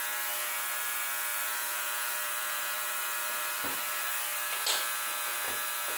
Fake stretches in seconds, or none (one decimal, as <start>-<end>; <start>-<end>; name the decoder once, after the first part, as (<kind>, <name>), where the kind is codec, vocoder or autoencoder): 1.3-3.6 (vocoder, BigVGAN v2)